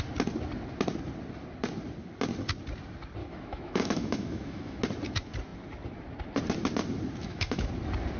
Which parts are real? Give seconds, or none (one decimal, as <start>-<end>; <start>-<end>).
0.0-3.2; 4.8-7.2; 7.7-8.2